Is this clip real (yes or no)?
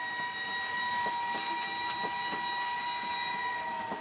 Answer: yes